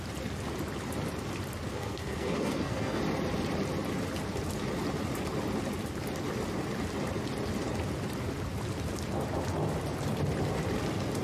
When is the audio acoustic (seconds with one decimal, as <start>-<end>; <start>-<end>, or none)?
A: 0.0-1.7; 3.0-11.2